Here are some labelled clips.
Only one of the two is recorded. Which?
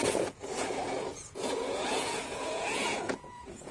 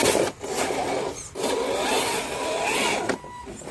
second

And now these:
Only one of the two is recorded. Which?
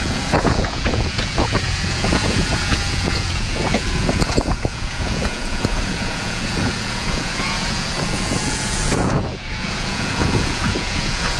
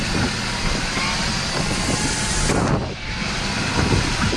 second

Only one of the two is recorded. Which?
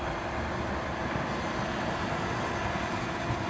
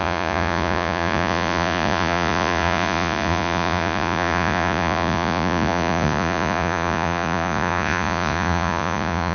first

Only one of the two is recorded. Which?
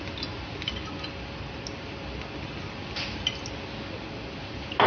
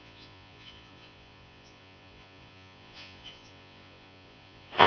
first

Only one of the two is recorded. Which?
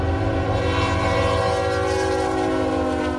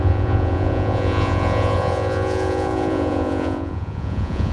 first